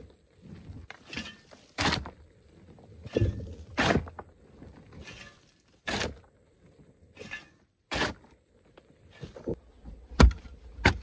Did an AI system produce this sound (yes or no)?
yes